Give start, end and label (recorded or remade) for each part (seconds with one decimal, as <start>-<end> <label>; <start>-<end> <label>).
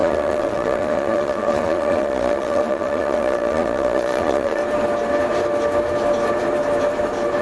0.0-4.6 remade; 4.6-7.4 recorded